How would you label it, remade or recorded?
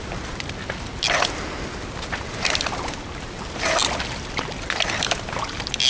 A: recorded